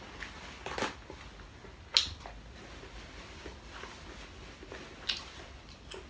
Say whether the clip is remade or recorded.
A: recorded